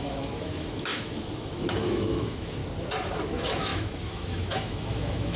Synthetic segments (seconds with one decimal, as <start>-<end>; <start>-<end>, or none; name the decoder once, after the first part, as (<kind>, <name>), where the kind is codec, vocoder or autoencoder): 0.0-2.6 (autoencoder, DAC-VAE); 3.2-5.4

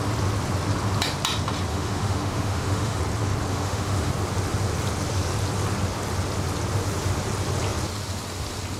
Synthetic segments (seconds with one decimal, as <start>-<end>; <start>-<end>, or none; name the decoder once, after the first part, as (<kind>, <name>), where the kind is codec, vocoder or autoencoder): 1.7-3.0 (autoencoder, DAC-VAE); 3.5-4.1

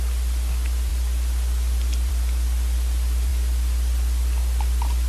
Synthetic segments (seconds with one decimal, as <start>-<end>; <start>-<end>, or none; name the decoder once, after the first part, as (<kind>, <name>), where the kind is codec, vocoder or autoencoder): none

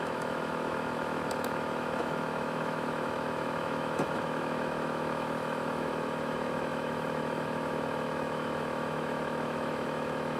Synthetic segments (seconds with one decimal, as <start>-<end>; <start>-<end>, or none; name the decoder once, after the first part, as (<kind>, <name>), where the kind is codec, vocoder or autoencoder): 0.0-10.4 (autoencoder, DAC-VAE)

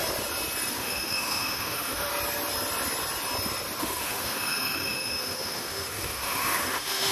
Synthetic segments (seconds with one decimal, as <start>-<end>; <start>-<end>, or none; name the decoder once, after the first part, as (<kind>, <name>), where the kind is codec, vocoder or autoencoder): 0.7-2.1 (autoencoder, DAC-VAE); 3.8-7.1

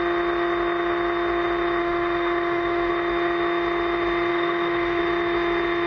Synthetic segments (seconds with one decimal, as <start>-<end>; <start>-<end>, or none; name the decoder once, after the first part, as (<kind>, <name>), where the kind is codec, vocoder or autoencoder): 1.8-2.9 (autoencoder, DAC-VAE); 4.3-5.0